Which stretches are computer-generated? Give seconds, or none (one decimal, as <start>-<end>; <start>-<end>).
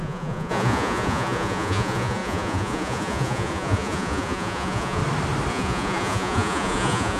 0.0-5.0; 5.5-7.2